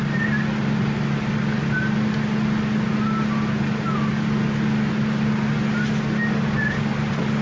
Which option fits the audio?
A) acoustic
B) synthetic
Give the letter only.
A